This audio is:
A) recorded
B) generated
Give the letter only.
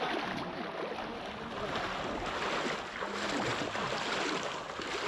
A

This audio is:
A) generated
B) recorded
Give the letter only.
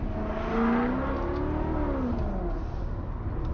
B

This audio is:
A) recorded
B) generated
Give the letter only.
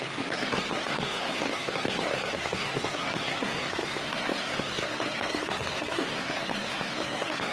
B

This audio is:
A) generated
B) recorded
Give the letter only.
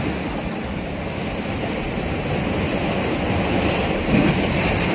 B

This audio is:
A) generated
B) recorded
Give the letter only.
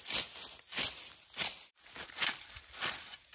B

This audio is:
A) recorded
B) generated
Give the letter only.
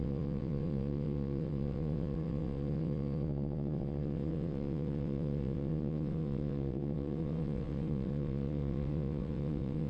B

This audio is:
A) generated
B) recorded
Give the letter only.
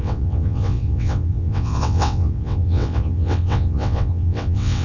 A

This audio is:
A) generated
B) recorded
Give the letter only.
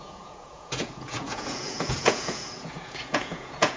A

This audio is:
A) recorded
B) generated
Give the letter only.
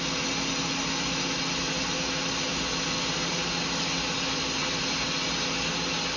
A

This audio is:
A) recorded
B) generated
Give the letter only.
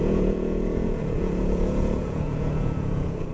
B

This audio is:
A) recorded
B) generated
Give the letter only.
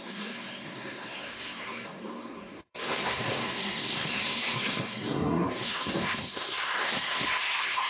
B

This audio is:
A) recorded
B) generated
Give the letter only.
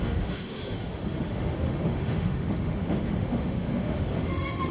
B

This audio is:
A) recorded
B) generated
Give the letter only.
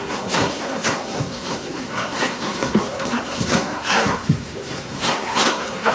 B